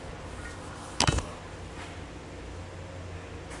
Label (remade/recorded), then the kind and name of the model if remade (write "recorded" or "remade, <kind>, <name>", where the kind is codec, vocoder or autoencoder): recorded